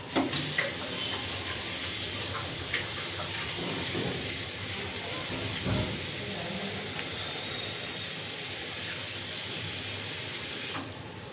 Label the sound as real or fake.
fake